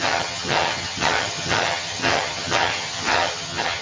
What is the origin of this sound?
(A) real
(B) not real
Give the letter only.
B